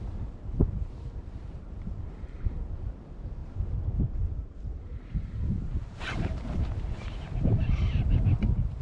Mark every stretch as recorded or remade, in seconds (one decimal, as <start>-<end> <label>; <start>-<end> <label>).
0.0-8.8 remade

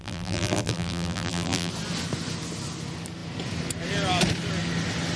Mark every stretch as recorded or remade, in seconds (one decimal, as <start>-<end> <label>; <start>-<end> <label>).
0.0-1.7 remade; 1.7-5.2 recorded

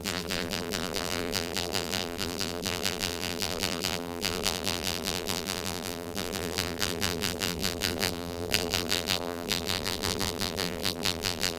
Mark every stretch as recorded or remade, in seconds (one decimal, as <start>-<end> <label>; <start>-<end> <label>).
0.0-11.6 remade

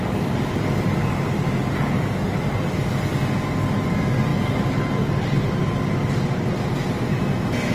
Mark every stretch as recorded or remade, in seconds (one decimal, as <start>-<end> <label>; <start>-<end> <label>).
0.0-7.7 recorded

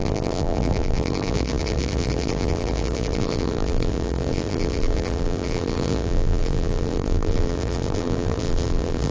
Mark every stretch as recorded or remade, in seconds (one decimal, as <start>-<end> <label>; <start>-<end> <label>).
0.0-9.1 remade

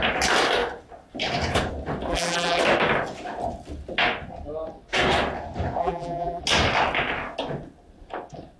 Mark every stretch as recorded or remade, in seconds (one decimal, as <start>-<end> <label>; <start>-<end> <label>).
0.0-2.1 recorded; 2.1-2.6 remade; 2.6-5.8 recorded; 5.8-6.4 remade; 6.4-8.6 recorded